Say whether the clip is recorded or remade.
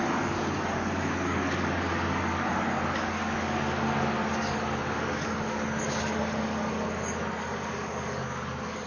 remade